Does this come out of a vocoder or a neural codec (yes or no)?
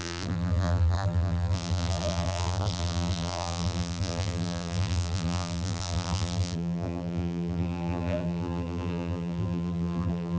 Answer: yes